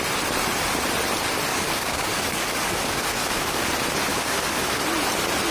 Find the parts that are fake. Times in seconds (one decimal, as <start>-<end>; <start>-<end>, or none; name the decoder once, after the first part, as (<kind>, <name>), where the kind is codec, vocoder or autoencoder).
1.5-3.6 (codec, DAC); 4.1-4.8